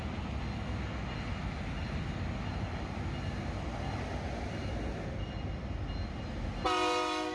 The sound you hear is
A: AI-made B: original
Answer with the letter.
B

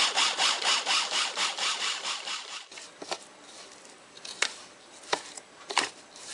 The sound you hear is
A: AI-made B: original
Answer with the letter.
A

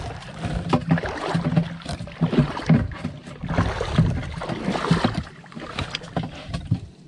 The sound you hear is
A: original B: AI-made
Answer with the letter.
A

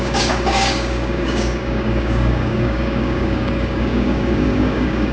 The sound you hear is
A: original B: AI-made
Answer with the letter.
B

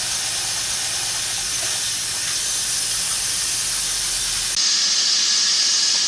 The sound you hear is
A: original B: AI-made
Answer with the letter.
A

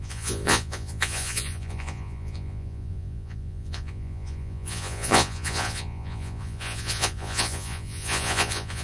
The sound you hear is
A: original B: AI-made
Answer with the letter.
B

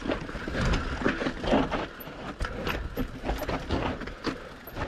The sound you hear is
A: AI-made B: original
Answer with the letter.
B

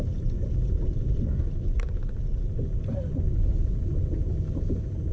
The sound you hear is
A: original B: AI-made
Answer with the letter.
A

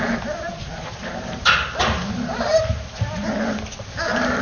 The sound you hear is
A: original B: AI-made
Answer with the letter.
A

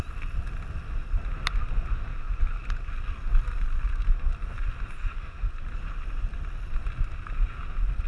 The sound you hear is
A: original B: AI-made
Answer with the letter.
A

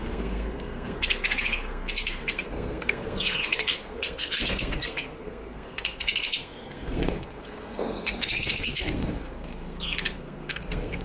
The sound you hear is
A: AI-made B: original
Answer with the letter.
A